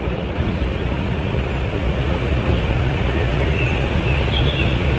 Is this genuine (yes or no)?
no